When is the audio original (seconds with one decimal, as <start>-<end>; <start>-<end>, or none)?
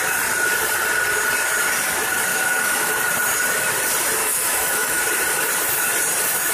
0.0-2.3; 2.9-4.2; 5.0-6.5